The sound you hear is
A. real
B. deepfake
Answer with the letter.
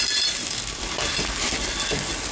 A